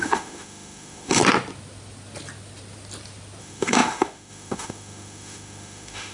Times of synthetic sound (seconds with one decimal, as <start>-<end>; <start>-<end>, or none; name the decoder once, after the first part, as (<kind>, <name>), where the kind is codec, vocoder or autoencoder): 0.0-1.2 (autoencoder, DAC-VAE); 3.4-6.1